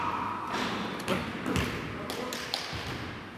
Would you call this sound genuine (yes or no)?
yes